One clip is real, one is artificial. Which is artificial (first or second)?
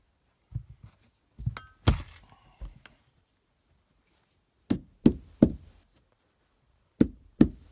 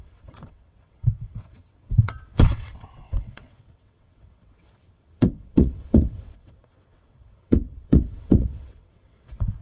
second